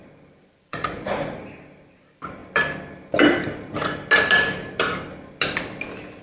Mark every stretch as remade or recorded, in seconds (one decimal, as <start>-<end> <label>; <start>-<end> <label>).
0.0-0.7 recorded; 0.7-1.4 remade; 1.4-6.2 recorded